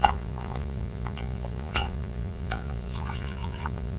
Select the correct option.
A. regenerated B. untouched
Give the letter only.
A